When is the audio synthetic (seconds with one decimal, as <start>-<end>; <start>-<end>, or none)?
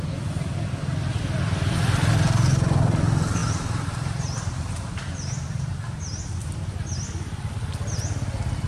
3.4-5.7; 6.4-7.0